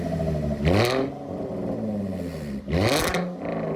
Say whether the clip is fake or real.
real